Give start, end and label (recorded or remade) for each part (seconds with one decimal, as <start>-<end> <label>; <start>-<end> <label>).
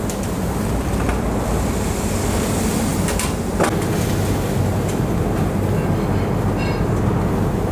0.0-7.7 recorded